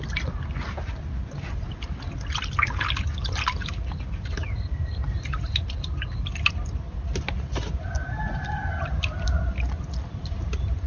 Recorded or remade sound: recorded